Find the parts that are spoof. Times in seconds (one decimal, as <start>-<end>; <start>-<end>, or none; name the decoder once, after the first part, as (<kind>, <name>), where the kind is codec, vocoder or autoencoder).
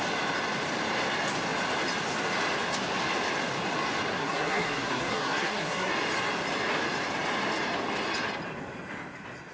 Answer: 4.2-5.9 (codec, SNAC)